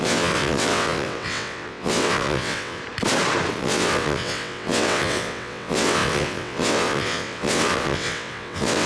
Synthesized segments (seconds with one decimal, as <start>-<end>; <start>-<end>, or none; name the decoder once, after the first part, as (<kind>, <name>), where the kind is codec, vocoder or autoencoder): 0.0-2.8 (vocoder, WaveNeXt); 3.5-8.9